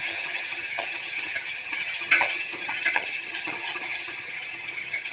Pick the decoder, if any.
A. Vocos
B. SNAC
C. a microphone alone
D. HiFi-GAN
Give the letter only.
D